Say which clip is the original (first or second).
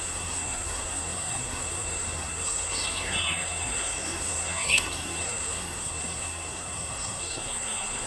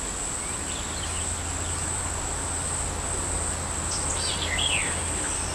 second